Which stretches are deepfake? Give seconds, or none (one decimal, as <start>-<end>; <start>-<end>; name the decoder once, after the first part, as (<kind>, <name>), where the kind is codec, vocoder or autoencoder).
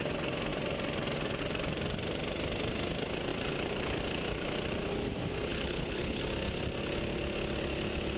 5.5-6.2 (codec, HILCodec)